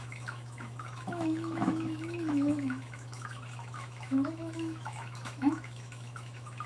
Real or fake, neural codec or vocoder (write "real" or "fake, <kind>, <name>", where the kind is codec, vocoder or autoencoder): fake, autoencoder, DAC-VAE